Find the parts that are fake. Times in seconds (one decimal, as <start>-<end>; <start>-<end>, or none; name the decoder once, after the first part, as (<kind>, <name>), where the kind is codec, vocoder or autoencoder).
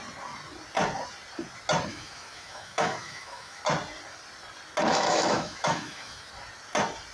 1.9-3.6 (autoencoder, DAC-VAE); 4.9-6.3